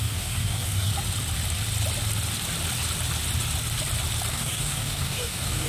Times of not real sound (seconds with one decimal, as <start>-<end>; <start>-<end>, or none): 0.0-0.9; 4.3-5.7